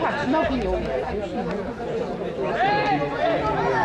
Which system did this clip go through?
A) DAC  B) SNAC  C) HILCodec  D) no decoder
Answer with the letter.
D